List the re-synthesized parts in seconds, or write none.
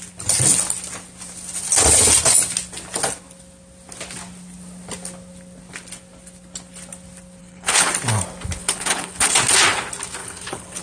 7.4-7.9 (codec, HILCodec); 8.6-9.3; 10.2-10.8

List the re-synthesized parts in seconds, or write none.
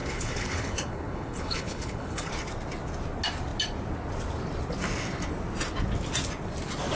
0.0-2.3 (codec, HILCodec)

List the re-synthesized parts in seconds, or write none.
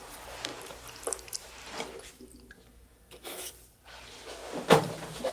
2.7-3.5 (autoencoder, DAC-VAE)